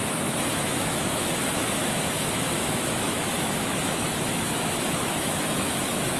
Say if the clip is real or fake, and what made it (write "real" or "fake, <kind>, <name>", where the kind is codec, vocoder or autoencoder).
fake, autoencoder, DAC-VAE